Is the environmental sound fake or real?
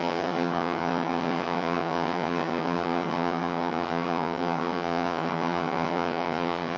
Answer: fake